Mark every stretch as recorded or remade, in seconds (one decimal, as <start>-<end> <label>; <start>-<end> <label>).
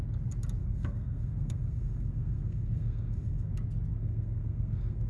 0.0-0.6 recorded; 0.6-3.5 remade; 3.5-3.9 recorded; 3.9-5.1 remade